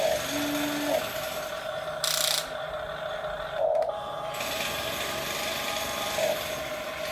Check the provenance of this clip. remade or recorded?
recorded